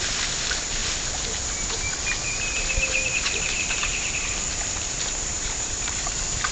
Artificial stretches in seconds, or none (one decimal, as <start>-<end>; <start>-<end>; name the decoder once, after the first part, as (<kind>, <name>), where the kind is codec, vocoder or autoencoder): 0.0-0.8 (vocoder, BigVGAN v2); 2.7-3.9; 5.3-6.5